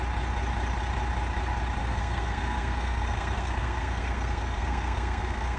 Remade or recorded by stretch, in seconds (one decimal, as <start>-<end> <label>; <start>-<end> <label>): 0.0-1.8 recorded; 1.8-5.6 remade